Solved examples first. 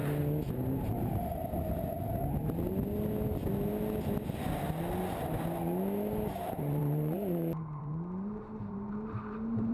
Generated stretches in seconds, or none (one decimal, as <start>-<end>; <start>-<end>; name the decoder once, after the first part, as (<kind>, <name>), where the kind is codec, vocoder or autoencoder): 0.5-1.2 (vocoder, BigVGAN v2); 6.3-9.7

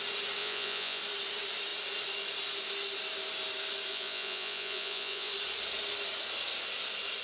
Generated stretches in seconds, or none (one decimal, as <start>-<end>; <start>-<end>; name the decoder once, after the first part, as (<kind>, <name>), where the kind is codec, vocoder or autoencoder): 0.4-1.0 (vocoder, Vocos); 3.9-5.3

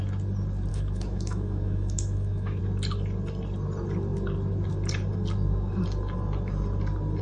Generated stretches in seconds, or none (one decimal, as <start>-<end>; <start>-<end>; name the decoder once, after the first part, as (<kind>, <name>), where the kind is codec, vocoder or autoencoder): 0.7-2.6 (autoencoder, DAC-VAE)